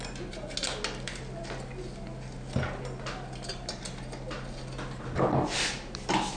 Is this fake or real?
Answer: real